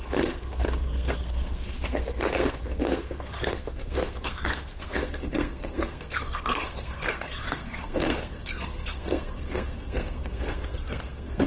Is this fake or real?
fake